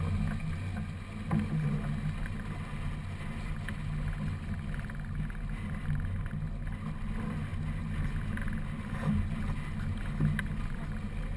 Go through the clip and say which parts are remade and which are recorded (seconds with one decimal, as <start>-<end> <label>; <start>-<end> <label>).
0.0-11.4 recorded